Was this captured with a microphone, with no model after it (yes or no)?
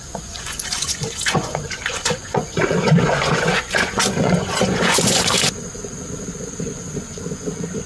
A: no